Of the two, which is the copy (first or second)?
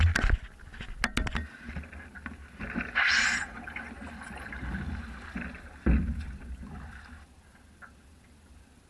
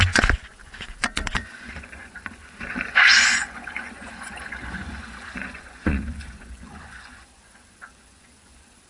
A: second